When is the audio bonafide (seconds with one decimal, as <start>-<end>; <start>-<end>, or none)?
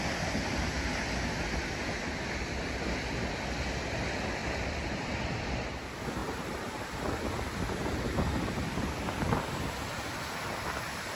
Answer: 0.0-4.4; 5.1-6.2; 6.8-11.2